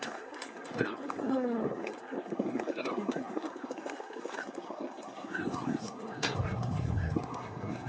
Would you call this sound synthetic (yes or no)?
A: yes